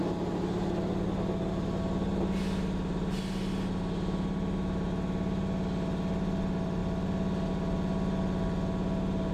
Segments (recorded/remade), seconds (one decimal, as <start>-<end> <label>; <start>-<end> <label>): 0.0-9.3 recorded